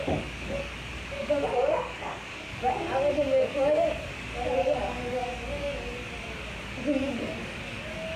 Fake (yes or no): yes